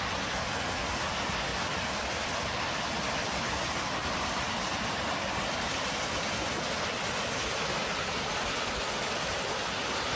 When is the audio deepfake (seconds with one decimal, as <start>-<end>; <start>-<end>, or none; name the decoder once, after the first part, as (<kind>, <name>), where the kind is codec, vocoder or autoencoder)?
1.5-5.4 (vocoder, BigVGAN v2); 7.7-8.5